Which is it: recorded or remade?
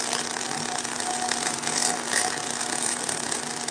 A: recorded